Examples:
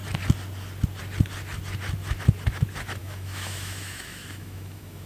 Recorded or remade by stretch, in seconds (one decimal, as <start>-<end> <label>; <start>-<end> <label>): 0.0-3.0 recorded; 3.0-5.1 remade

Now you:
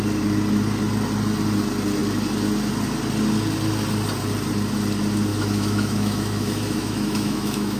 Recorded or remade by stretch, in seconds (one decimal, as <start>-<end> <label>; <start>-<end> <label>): 0.0-5.3 recorded; 5.3-7.8 remade

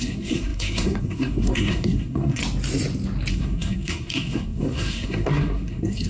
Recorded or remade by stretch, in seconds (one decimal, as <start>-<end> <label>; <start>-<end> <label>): 0.0-2.4 remade; 2.4-3.3 recorded; 3.3-6.1 remade